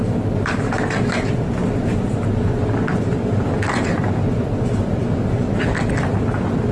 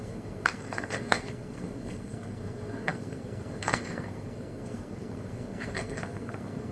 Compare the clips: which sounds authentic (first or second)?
first